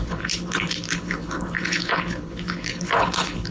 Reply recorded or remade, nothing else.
remade